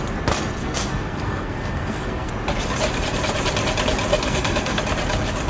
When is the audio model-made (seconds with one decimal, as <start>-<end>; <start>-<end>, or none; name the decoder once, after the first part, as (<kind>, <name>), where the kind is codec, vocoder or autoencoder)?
0.6-2.3 (codec, SNAC); 4.1-4.8